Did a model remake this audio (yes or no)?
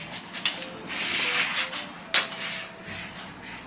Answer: no